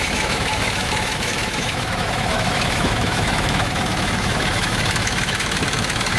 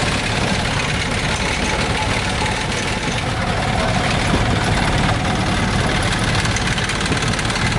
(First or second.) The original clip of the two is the second